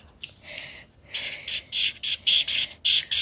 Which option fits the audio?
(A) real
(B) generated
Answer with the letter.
A